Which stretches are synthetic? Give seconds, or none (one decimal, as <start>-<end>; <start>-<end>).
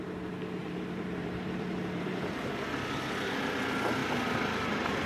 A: 0.6-2.1; 4.0-5.1